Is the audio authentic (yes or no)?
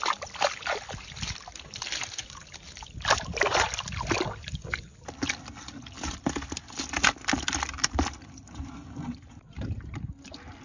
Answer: yes